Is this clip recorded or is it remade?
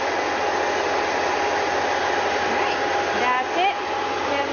recorded